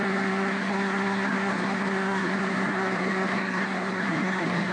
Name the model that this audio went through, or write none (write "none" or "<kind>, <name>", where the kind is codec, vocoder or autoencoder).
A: codec, SNAC